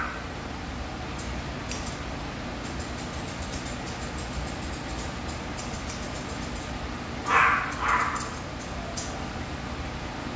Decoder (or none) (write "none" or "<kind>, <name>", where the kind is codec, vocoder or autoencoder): none